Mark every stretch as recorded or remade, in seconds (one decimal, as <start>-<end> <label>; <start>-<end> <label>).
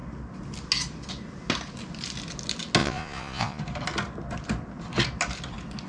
0.0-2.8 recorded; 2.8-3.6 remade; 3.6-5.9 recorded